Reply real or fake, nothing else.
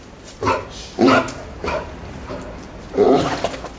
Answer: fake